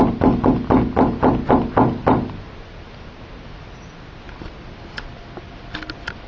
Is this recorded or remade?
recorded